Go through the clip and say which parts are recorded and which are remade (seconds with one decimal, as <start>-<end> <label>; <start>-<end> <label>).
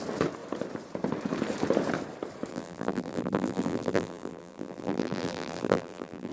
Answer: 0.0-2.5 recorded; 2.5-6.3 remade